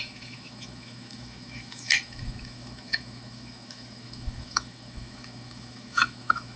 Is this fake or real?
fake